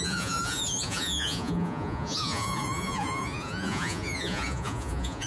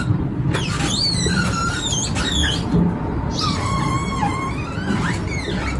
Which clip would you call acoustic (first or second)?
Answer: second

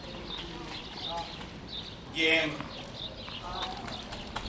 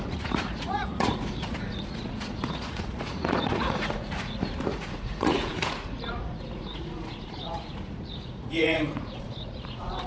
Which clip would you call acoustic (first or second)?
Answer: first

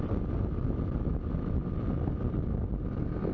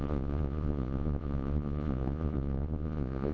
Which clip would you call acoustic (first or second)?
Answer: first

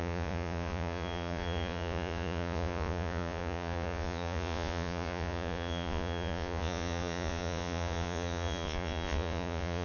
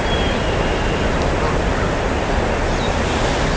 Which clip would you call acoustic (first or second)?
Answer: second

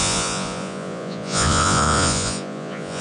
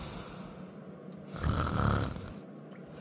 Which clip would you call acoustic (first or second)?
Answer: second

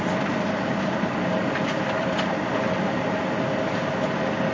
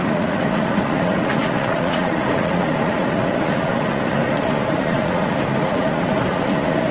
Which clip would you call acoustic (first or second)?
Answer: first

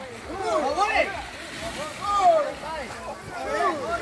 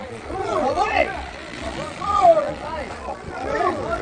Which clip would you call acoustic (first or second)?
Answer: first